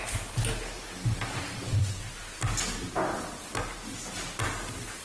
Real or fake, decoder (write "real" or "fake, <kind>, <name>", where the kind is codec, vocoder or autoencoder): real